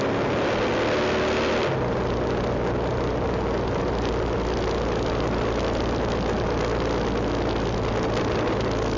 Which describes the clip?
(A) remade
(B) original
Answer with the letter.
B